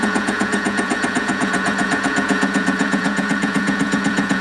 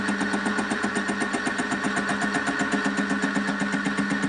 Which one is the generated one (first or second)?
first